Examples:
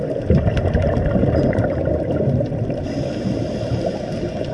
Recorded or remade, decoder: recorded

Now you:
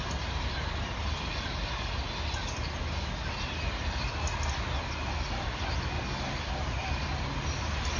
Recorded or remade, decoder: recorded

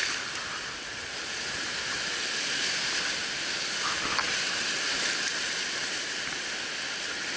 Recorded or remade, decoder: recorded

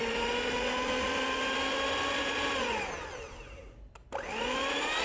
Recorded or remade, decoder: recorded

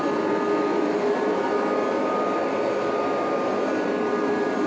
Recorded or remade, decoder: recorded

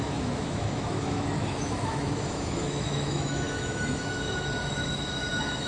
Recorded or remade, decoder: remade, autoencoder, DAC-VAE